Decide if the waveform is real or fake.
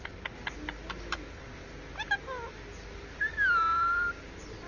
real